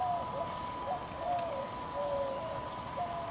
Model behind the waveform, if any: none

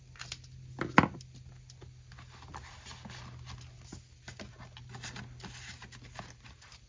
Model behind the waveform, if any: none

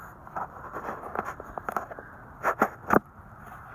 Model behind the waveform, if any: none